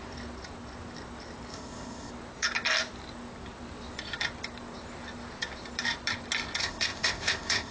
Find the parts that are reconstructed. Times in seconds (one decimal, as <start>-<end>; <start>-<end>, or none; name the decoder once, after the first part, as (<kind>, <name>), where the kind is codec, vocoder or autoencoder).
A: 1.5-2.1 (codec, ZipCodec); 6.6-7.7